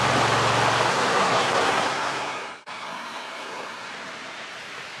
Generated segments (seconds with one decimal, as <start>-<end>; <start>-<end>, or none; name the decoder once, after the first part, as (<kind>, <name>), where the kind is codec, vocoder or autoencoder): 0.9-3.9 (codec, SNAC)